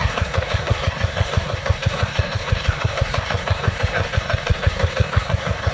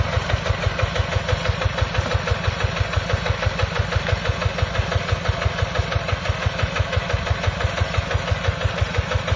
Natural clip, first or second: second